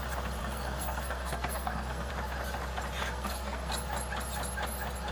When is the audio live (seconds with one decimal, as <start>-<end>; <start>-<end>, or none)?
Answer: 0.0-0.4; 2.1-3.0; 3.7-5.1